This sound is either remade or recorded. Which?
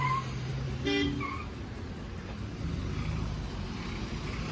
recorded